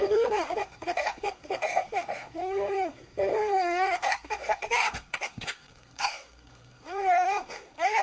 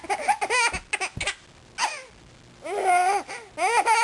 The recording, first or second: second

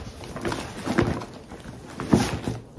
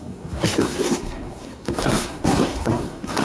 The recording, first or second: first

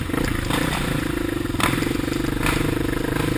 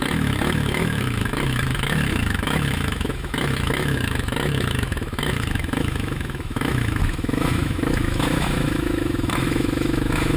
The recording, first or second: first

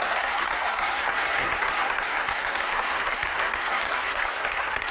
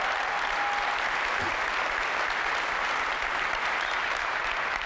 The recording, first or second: second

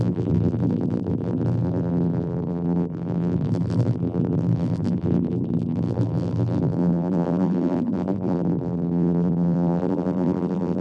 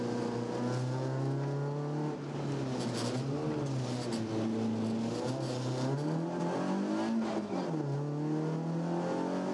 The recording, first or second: second